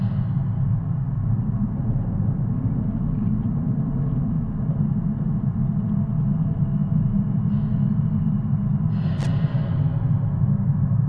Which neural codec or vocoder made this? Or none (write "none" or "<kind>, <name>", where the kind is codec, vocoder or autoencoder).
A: none